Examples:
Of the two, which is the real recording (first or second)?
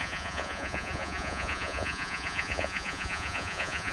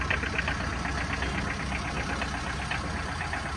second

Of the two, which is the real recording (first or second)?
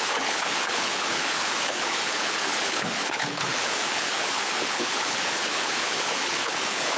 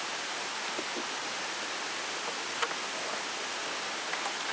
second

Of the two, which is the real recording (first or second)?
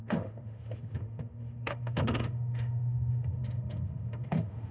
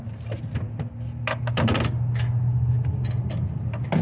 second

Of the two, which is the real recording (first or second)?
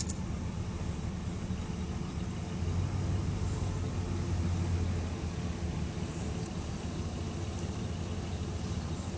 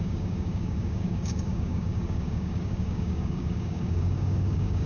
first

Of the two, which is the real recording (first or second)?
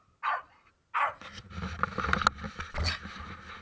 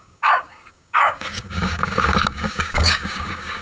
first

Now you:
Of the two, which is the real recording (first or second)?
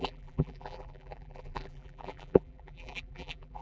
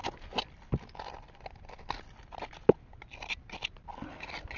second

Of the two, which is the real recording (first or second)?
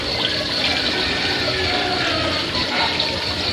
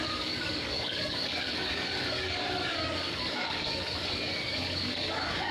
first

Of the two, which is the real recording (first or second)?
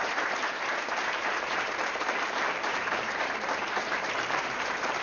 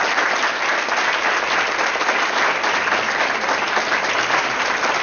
second